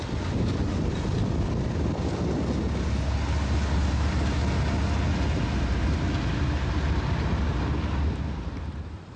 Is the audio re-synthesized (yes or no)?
no